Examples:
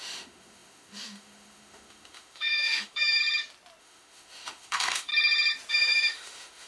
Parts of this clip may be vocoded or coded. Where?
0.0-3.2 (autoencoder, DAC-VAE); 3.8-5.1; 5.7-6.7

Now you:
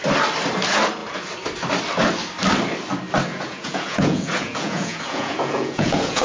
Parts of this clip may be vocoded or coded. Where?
3.3-6.2 (vocoder, Vocos)